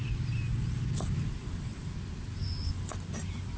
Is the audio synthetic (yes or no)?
no